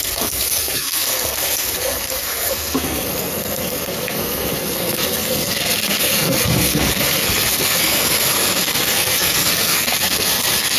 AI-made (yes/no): yes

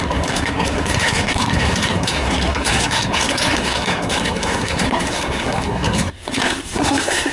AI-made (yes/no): yes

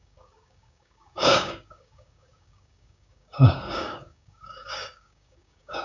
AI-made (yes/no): yes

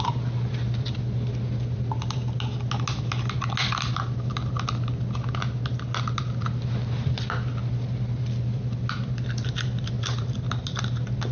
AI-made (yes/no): no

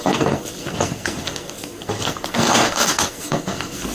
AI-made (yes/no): yes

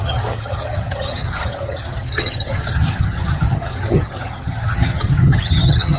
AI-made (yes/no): yes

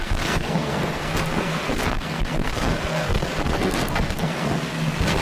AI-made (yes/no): yes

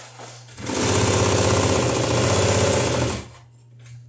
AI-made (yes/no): no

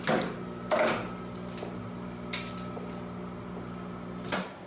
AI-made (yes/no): no